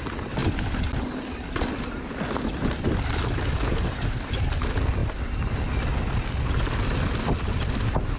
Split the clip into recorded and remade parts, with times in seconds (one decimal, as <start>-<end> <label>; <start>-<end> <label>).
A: 0.0-8.2 recorded